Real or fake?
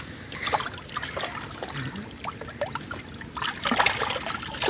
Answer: real